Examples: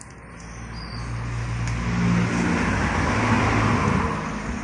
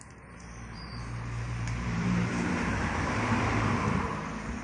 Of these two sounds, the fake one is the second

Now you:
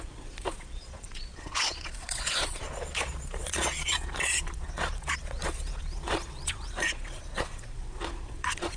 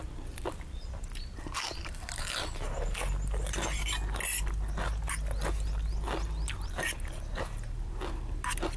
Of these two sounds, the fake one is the first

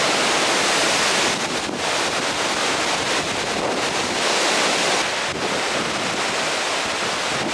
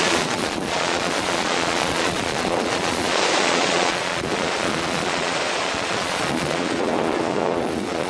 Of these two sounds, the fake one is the second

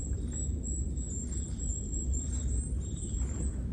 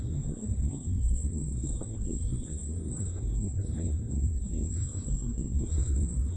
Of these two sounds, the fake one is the second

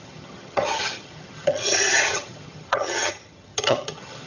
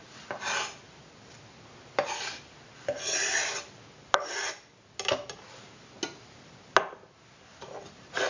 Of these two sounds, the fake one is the first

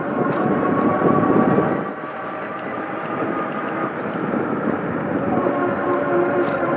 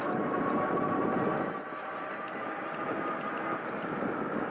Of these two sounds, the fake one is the first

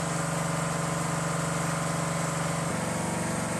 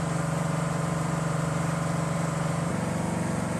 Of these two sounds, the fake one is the second